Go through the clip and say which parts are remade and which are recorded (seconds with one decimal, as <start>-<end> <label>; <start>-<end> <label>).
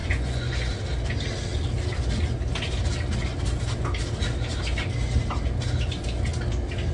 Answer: 0.0-0.7 remade; 0.7-6.9 recorded